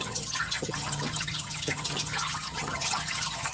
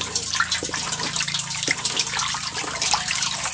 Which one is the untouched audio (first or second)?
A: second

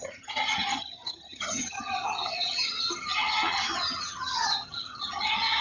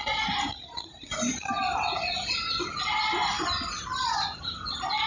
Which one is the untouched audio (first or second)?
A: second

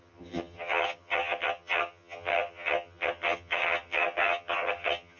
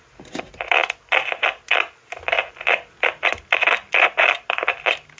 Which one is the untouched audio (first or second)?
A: second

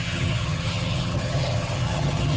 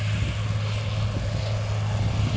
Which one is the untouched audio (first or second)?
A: second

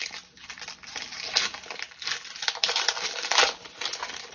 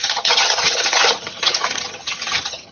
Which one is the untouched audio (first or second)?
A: first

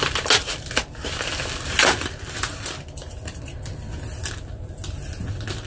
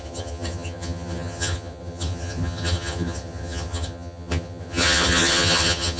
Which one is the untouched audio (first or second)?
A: first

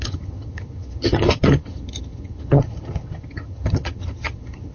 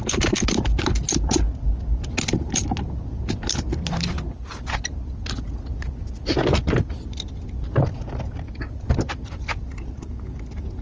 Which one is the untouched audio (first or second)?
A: second